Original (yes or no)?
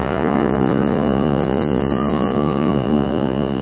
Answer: no